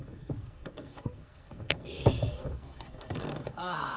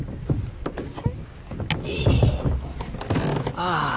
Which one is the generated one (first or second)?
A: first